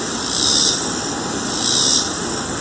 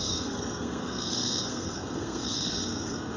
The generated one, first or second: second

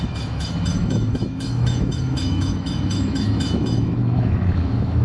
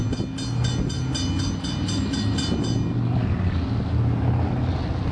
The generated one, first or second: first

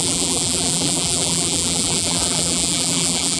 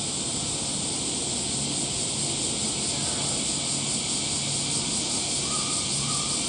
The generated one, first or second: first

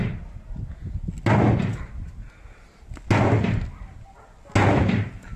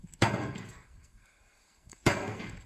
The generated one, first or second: second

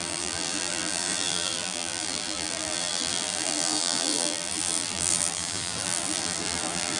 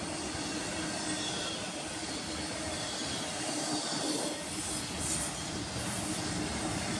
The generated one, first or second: first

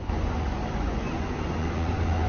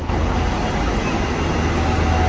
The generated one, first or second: first